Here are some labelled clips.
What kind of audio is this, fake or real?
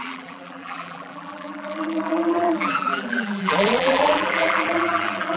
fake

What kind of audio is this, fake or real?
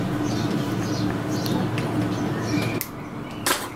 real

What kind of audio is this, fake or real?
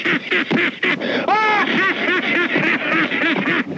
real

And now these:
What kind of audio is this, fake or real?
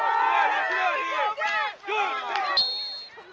real